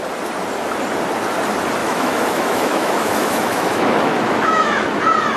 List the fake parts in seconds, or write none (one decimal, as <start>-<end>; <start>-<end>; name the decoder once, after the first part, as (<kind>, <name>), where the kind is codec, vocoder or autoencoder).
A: 1.8-5.0 (autoencoder, DAC-VAE)